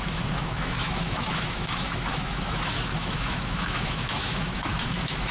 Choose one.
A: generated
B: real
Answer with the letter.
A